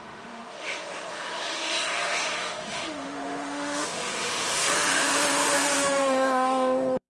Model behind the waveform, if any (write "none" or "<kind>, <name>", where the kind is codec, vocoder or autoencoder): autoencoder, DAC-VAE